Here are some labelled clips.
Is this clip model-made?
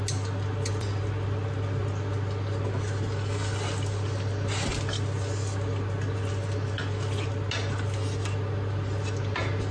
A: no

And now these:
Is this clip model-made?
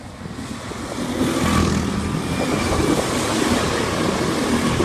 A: no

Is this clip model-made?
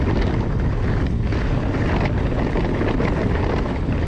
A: no